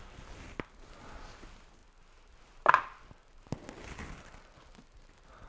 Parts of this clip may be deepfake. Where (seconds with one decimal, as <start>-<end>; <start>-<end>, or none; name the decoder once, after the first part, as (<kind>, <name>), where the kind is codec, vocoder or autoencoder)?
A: none